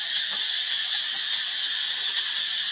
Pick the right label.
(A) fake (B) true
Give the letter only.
B